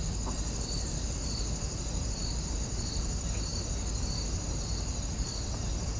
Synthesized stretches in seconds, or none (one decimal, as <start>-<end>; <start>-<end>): none